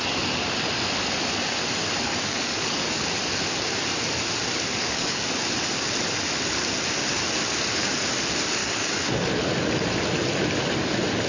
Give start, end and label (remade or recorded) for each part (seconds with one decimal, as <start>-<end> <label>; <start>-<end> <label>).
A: 0.0-2.1 recorded; 2.1-2.9 remade; 2.9-4.7 recorded; 4.7-5.3 remade; 5.3-8.6 recorded; 8.6-9.3 remade; 9.3-11.3 recorded